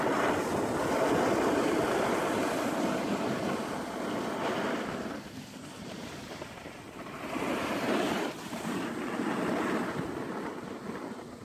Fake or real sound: real